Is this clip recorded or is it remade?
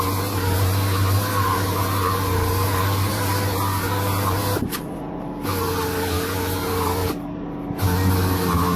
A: recorded